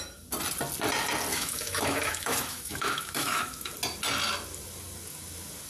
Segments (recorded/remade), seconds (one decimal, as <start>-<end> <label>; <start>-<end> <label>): 0.0-1.3 recorded; 1.3-3.7 remade; 3.7-5.7 recorded